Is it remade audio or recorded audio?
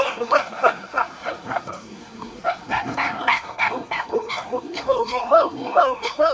remade